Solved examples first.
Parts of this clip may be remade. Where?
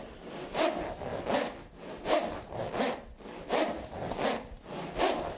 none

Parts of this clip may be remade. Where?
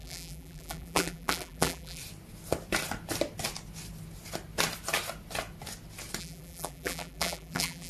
0.0-2.0; 6.2-7.9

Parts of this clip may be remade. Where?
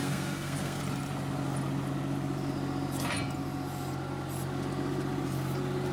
0.0-0.8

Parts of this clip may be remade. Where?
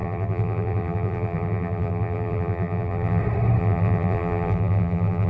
0.0-3.2; 3.6-5.3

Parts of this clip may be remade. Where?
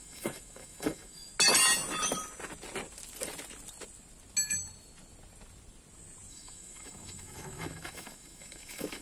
0.0-1.3; 6.3-9.0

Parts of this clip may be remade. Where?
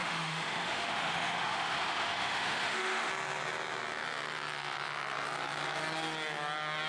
0.0-3.1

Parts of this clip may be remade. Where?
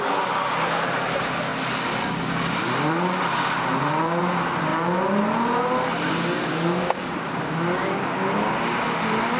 6.4-8.5